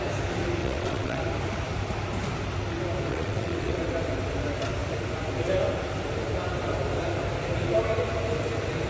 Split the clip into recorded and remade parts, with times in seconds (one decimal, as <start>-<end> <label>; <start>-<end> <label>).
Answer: 0.0-0.6 recorded; 0.6-1.2 remade; 1.2-3.1 recorded; 3.1-3.8 remade; 3.8-8.9 recorded